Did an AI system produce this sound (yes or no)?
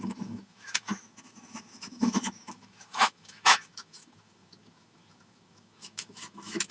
yes